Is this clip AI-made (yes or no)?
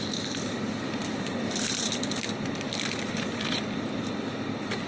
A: no